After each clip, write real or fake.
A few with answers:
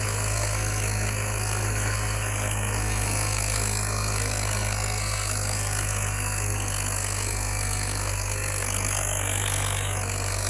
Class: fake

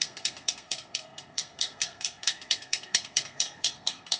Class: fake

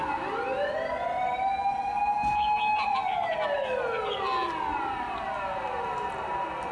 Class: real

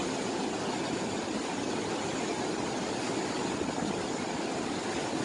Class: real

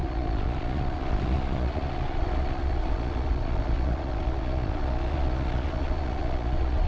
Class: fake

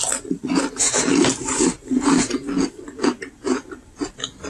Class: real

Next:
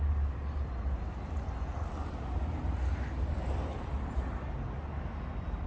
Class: real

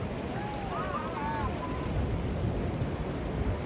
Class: real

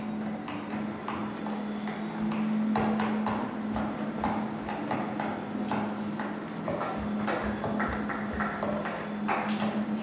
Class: real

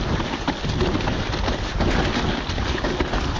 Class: real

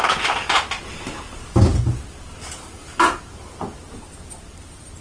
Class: real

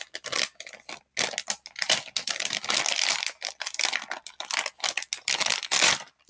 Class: real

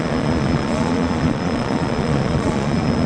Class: fake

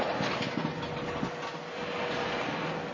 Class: real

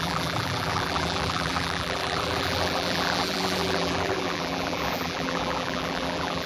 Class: fake